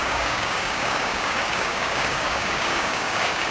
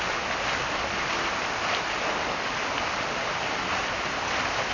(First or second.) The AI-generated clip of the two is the first